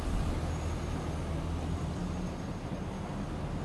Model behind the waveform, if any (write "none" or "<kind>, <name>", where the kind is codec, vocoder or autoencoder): none